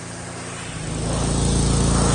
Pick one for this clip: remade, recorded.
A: recorded